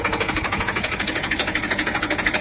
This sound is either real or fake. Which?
fake